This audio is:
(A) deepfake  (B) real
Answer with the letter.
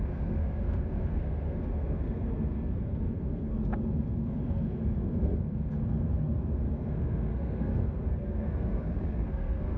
A